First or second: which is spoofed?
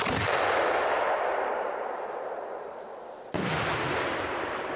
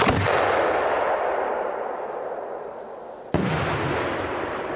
first